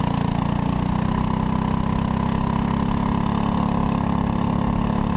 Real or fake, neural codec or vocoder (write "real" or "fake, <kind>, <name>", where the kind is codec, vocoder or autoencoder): real